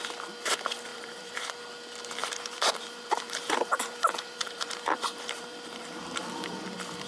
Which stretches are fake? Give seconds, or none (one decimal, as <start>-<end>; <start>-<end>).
0.9-1.5; 2.2-6.5